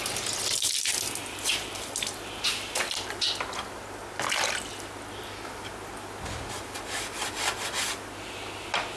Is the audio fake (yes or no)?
no